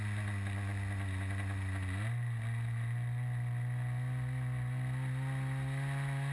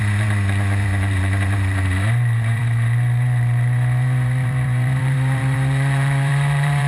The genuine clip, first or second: first